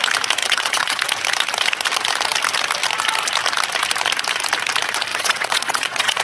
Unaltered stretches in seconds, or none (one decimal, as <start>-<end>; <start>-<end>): 0.0-0.4; 1.0-5.1